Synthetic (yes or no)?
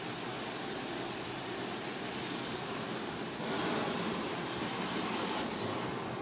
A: no